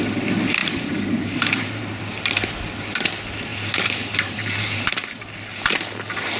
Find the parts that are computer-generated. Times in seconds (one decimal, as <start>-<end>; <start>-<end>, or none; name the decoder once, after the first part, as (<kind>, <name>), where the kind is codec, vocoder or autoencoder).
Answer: 0.6-2.0 (vocoder, BigVGAN v2); 3.5-5.2